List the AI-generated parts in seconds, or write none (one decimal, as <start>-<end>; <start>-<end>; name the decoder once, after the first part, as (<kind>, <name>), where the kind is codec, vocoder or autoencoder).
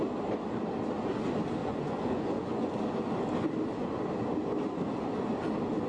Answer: 1.6-2.7 (vocoder, Vocos)